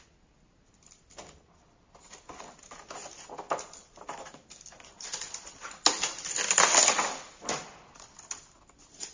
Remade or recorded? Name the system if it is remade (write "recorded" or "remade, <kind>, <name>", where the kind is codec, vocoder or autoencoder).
recorded